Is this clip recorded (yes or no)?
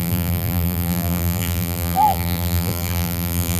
no